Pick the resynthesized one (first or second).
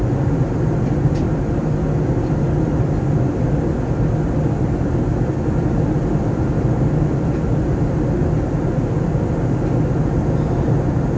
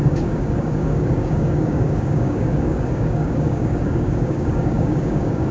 second